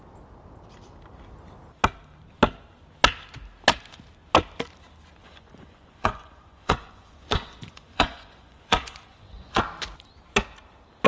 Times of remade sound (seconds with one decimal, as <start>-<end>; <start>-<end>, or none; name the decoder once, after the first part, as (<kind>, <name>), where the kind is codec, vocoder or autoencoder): 5.2-9.6 (vocoder, Vocos)